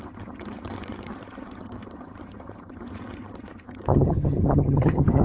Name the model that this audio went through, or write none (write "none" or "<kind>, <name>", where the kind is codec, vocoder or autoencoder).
vocoder, HiFi-GAN